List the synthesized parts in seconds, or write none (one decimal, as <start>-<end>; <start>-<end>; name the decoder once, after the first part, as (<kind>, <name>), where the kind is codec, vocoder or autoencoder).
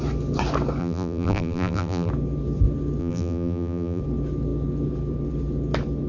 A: 0.8-2.1 (vocoder, BigVGAN v2); 3.0-4.0